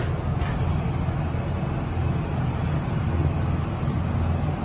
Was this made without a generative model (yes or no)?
yes